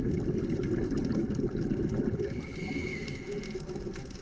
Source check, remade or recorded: recorded